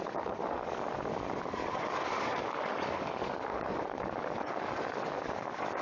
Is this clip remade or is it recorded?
remade